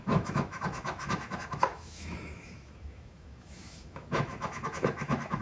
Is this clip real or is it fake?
fake